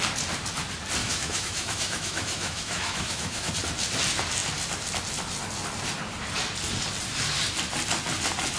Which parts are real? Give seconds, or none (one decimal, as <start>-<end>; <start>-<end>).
0.0-1.0; 3.5-8.6